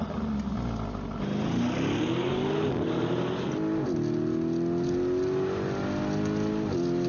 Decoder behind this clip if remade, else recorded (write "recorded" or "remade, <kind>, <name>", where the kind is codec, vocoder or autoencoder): recorded